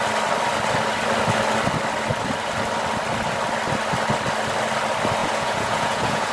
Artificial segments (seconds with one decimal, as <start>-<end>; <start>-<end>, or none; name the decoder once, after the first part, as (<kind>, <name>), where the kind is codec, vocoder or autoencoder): 5.2-6.3 (vocoder, Vocos)